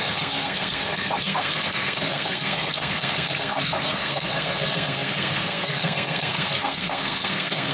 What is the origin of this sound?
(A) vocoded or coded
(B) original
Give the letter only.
A